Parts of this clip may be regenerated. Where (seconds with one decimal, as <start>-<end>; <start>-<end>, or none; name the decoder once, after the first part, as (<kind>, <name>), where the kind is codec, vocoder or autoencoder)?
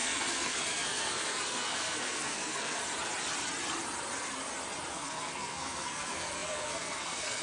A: 0.0-2.8 (codec, SNAC); 4.9-7.4